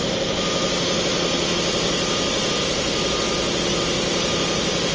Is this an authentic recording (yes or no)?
yes